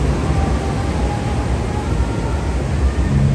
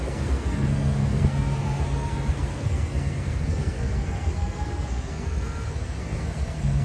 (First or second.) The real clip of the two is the first